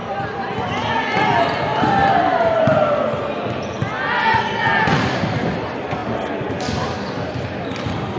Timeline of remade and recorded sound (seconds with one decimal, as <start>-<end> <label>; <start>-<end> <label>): 0.0-8.2 recorded

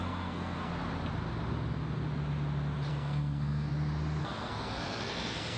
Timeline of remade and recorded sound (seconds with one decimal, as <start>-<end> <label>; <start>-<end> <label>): 0.0-0.7 remade; 0.7-2.9 recorded; 2.9-3.7 remade; 3.7-4.2 recorded; 4.2-5.6 remade

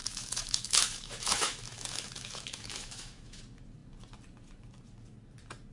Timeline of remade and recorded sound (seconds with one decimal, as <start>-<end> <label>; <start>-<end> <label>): 0.0-3.4 remade; 3.4-5.7 recorded

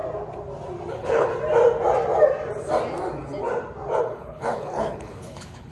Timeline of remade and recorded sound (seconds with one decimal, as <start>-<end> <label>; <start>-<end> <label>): 0.0-0.9 recorded; 0.9-1.3 remade; 1.3-4.0 recorded; 4.0-5.7 remade